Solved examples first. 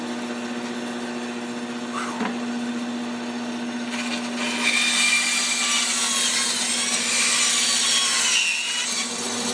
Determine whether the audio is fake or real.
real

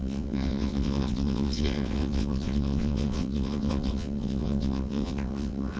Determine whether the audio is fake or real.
fake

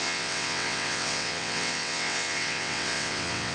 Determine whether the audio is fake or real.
fake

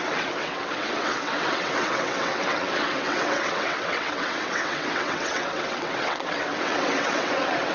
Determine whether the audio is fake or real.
fake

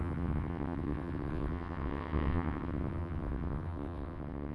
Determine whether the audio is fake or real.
fake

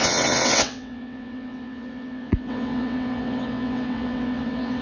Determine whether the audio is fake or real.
fake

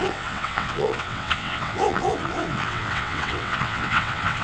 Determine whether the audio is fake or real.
fake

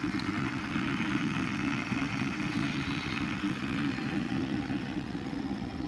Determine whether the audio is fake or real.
fake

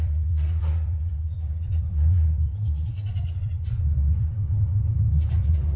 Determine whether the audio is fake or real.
fake